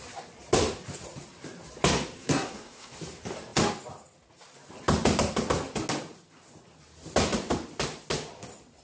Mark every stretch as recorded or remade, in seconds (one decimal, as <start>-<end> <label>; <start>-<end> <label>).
0.0-2.2 recorded; 2.2-3.0 remade; 3.0-8.8 recorded